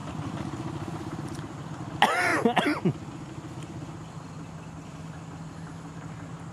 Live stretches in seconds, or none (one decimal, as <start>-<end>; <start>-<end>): 0.0-6.5

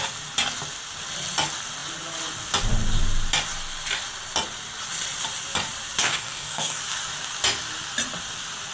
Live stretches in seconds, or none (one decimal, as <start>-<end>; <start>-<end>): 0.0-6.0; 6.8-8.7

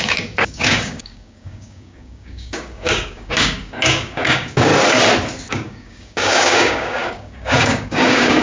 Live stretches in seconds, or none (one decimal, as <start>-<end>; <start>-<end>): 4.7-5.5

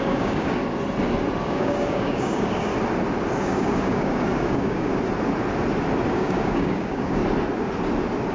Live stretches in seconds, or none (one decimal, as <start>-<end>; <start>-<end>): 0.6-1.4; 2.7-3.4; 4.9-6.1; 7.2-8.3

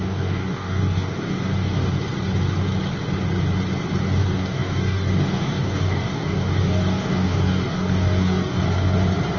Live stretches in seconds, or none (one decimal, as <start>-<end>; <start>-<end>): 1.9-4.0; 8.6-9.4

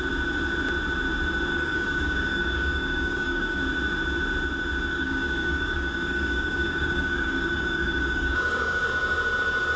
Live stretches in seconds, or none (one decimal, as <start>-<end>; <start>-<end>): 0.0-1.5; 3.6-4.9; 8.9-9.8